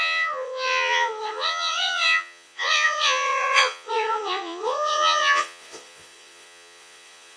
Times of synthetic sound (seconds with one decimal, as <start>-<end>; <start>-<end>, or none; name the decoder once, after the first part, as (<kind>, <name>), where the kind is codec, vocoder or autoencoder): 0.0-7.4 (vocoder, Vocos)